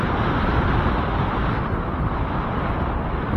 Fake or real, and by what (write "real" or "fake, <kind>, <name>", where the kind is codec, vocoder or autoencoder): real